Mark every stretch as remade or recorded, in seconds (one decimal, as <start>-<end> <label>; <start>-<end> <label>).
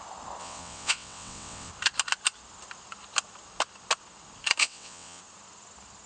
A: 0.0-0.4 recorded; 0.4-1.7 remade; 1.7-4.6 recorded; 4.6-5.2 remade; 5.2-6.1 recorded